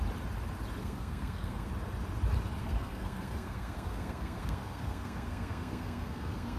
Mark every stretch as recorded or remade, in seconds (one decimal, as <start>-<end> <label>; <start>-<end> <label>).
0.0-0.8 recorded; 0.8-1.7 remade; 1.7-2.6 recorded; 2.6-6.6 remade

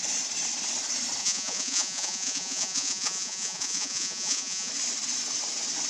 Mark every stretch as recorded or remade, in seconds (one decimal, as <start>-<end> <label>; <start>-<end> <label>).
0.0-1.2 recorded; 1.2-4.7 remade; 4.7-5.9 recorded

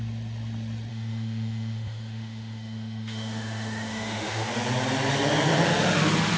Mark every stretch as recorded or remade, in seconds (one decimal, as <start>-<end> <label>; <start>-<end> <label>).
0.0-0.9 recorded; 0.9-4.5 remade; 4.5-6.4 recorded

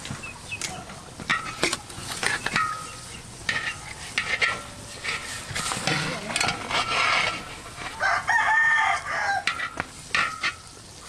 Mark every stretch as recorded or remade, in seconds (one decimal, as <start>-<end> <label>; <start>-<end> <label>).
0.0-1.3 recorded; 1.3-3.9 remade; 3.9-11.1 recorded